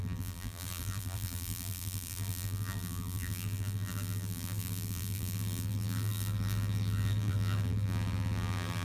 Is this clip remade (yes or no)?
yes